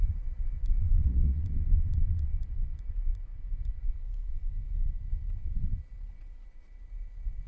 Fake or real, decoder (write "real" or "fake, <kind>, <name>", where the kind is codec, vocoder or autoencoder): fake, vocoder, Vocos